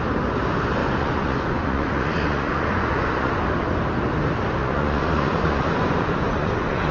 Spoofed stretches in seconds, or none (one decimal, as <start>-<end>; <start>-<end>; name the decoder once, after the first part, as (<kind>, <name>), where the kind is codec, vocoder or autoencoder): 0.8-3.4 (vocoder, Vocos); 4.6-6.9